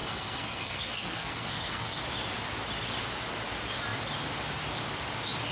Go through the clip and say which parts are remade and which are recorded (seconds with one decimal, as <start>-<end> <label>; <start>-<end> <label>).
0.0-2.0 remade; 2.0-5.5 recorded